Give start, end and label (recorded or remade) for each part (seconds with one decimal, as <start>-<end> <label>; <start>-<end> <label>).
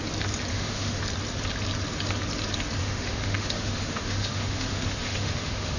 0.0-0.5 recorded; 0.5-1.0 remade; 1.0-2.8 recorded; 2.8-5.8 remade